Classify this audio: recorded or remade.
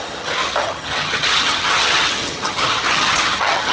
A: remade